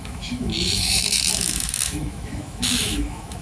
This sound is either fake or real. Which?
fake